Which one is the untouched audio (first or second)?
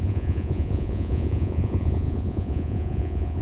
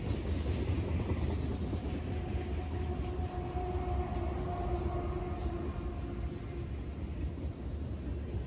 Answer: second